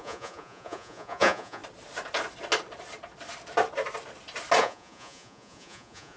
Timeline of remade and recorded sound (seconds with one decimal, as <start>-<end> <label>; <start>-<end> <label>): 0.0-1.6 remade; 1.6-4.6 recorded; 4.6-6.2 remade